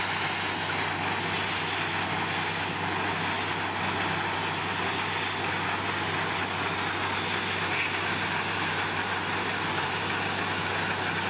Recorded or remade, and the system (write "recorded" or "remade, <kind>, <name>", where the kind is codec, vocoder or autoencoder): recorded